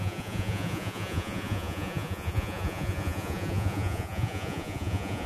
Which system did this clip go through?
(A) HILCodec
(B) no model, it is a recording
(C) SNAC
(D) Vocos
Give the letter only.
D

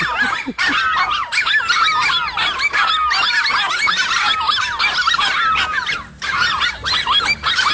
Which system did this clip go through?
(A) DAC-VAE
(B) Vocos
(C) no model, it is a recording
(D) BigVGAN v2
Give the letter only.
C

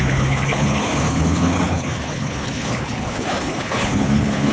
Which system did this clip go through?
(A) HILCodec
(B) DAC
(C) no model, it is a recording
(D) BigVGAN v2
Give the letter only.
A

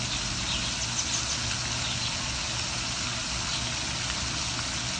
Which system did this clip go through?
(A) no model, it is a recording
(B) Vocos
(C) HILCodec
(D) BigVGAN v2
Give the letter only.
A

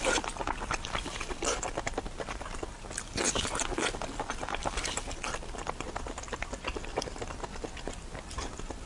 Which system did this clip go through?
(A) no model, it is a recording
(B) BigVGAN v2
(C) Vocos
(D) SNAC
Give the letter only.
A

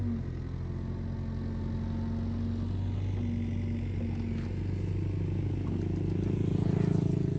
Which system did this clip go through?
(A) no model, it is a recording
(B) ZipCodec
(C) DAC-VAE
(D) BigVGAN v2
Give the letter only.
A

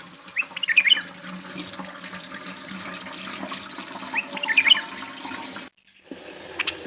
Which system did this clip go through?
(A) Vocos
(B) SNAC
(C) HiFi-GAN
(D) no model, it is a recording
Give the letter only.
D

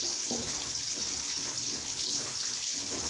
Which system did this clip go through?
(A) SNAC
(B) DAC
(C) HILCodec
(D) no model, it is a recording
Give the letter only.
C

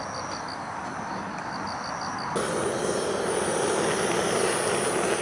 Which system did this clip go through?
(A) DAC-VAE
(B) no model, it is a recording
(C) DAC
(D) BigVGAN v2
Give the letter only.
B